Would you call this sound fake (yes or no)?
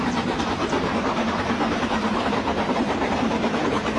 yes